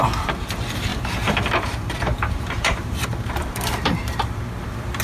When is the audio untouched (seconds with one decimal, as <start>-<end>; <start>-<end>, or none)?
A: 0.0-0.9; 3.9-5.0